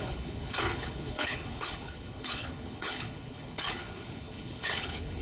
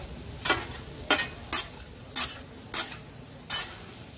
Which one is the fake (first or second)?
first